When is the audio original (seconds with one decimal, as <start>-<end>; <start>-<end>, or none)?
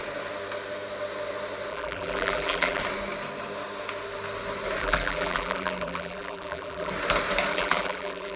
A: 0.0-1.7; 2.8-4.8; 6.9-7.5